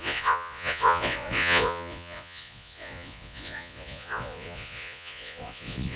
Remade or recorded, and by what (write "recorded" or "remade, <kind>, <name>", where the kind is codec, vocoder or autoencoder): remade, vocoder, Vocos